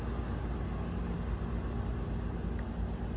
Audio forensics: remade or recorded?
recorded